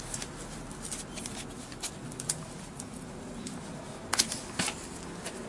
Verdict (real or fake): real